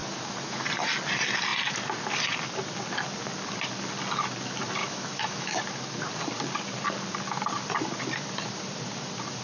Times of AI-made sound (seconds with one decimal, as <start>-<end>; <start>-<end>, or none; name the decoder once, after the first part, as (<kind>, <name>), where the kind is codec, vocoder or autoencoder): 4.8-5.6 (autoencoder, DAC-VAE)